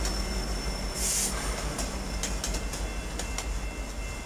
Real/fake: real